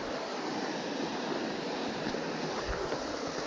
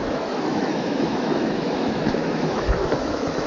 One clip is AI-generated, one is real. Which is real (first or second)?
first